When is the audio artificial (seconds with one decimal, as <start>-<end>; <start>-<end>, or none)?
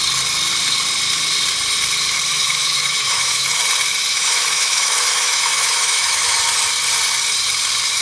2.3-3.6; 4.1-6.4